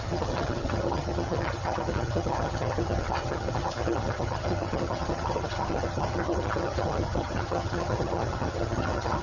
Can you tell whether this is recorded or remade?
remade